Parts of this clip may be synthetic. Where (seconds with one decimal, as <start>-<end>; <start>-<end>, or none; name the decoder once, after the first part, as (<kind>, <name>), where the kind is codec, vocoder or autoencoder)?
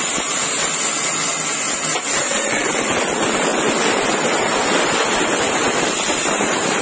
none